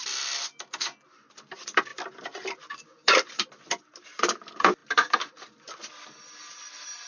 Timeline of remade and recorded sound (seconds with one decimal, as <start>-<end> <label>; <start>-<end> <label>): 0.0-1.9 recorded; 1.9-3.5 remade; 3.5-7.1 recorded